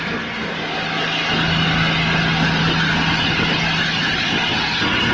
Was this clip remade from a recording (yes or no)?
no